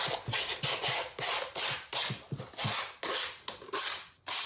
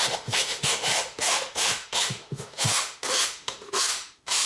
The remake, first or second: second